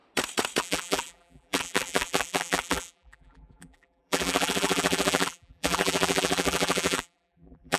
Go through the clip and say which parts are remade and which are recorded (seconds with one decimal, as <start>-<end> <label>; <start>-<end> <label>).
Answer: 0.0-0.6 recorded; 0.6-7.8 remade